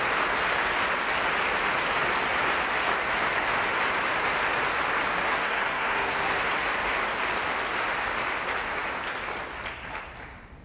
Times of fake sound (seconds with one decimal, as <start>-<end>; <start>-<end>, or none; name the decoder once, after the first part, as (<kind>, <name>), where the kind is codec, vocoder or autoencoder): 5.3-6.5 (codec, SNAC)